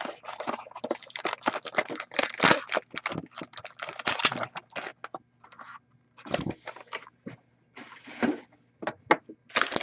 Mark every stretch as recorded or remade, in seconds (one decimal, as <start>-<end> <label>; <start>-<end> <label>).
0.0-9.8 recorded